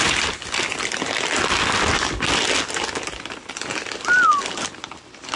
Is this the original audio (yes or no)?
yes